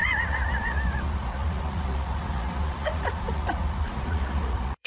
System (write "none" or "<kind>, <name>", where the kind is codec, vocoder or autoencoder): vocoder, Vocos